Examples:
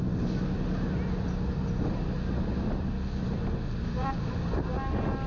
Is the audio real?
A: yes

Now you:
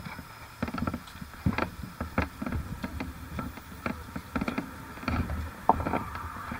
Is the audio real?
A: yes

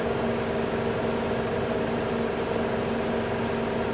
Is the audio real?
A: yes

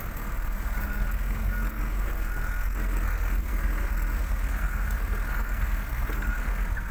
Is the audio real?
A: no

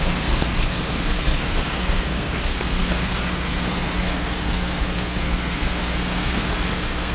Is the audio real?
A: no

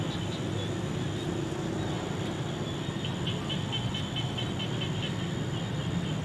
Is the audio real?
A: yes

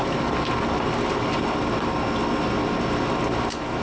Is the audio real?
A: yes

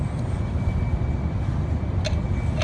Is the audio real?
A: yes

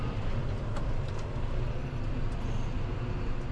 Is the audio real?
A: yes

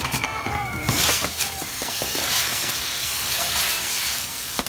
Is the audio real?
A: no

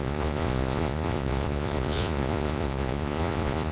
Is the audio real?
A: no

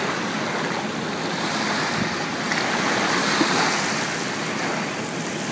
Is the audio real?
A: yes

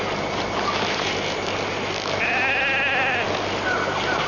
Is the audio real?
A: yes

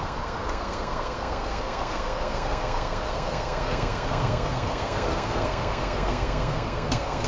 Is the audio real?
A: no